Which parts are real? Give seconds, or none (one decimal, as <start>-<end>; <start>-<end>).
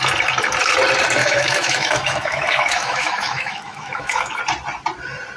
0.0-1.2; 4.4-5.4